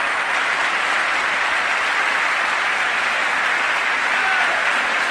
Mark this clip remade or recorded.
recorded